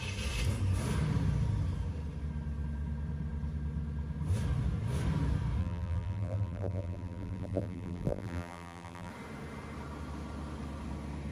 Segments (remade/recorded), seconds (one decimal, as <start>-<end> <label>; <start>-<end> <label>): 0.0-5.6 recorded; 5.6-9.1 remade; 9.1-11.3 recorded